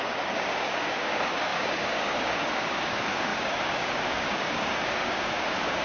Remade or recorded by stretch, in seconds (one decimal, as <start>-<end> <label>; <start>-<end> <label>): 0.0-5.8 remade